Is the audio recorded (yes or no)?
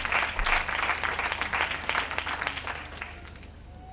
yes